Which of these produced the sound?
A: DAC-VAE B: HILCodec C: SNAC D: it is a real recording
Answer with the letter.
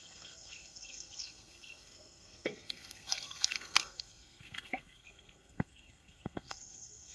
C